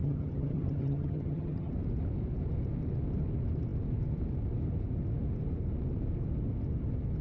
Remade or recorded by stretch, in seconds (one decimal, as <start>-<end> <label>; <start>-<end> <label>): 0.0-1.7 remade; 1.7-7.2 recorded